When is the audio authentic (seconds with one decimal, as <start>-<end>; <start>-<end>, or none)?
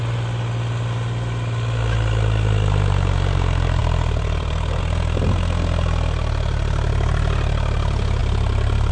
0.0-3.8; 4.8-8.2